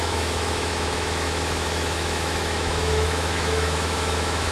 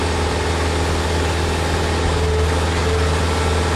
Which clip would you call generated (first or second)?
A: first